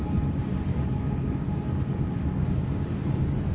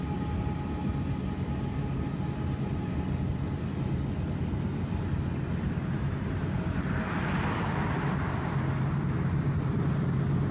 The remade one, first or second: first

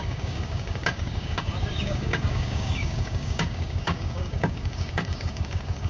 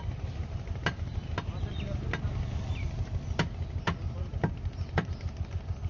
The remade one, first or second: first